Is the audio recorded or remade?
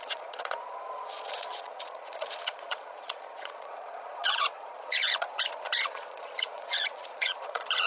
remade